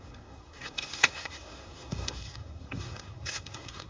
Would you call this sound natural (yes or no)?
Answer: no